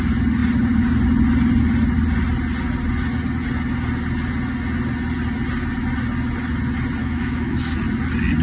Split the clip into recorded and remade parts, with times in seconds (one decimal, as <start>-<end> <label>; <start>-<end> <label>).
0.0-7.0 recorded; 7.0-7.6 remade; 7.6-8.4 recorded